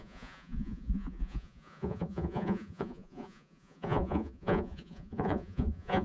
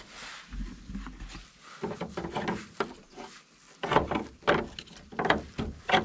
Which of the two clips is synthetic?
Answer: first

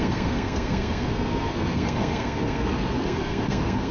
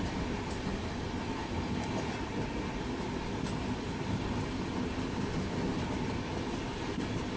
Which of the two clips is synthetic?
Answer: first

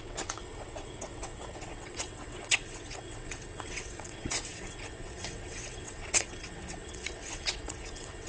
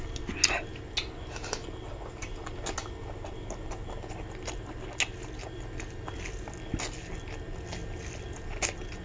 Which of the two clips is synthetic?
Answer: first